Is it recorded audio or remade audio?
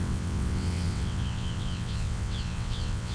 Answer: remade